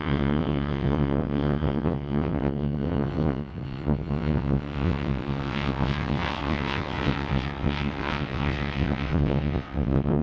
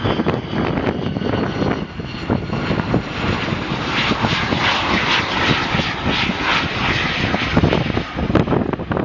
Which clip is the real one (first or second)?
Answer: second